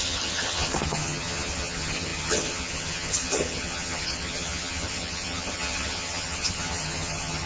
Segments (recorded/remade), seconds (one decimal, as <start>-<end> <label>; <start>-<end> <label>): 0.0-7.5 remade